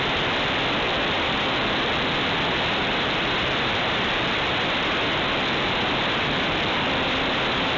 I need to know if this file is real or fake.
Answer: real